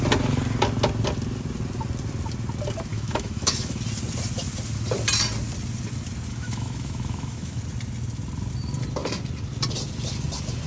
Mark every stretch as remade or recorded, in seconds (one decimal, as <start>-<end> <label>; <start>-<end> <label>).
0.0-2.9 recorded; 2.9-3.8 remade; 3.8-6.3 recorded; 6.3-7.6 remade; 7.6-10.7 recorded